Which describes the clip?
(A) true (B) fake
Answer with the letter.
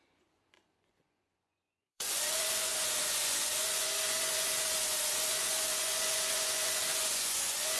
B